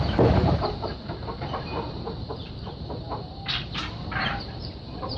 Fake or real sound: fake